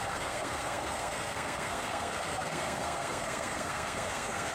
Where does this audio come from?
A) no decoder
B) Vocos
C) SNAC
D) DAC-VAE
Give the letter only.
C